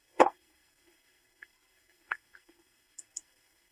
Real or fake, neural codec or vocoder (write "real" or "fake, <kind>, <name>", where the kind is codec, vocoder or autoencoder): fake, codec, SNAC